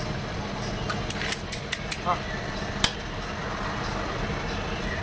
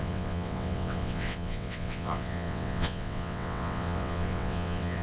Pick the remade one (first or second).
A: second